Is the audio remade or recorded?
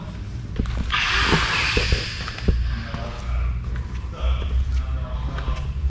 recorded